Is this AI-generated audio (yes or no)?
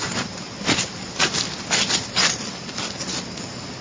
no